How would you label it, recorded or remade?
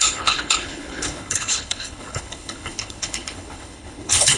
remade